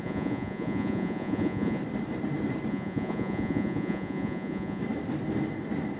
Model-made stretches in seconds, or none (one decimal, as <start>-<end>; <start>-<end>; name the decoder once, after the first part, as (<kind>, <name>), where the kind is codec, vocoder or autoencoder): 0.0-1.8 (vocoder, Vocos); 2.7-4.8